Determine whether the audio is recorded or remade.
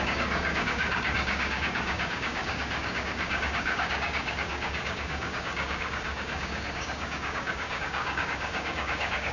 remade